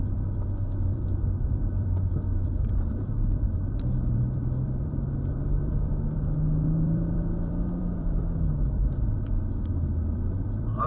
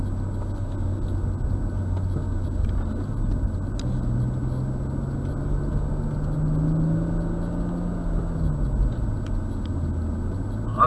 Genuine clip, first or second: second